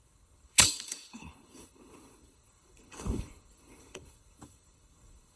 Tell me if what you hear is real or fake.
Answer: fake